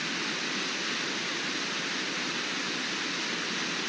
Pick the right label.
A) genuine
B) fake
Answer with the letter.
A